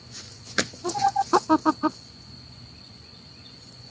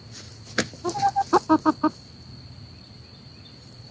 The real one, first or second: second